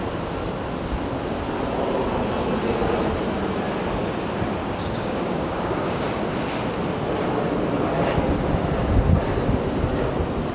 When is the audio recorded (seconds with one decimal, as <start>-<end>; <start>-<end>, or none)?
0.0-4.6; 6.2-10.5